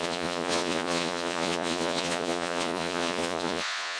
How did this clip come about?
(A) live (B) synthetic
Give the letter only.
B